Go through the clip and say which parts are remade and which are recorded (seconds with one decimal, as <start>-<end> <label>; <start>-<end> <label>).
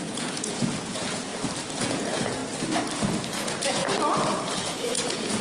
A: 0.0-1.3 remade; 1.3-1.8 recorded; 1.8-2.4 remade; 2.4-3.4 recorded; 3.4-3.8 remade; 3.8-4.6 recorded; 4.6-5.4 remade